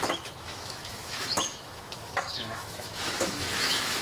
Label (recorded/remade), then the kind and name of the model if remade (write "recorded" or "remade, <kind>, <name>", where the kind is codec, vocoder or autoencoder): remade, autoencoder, DAC-VAE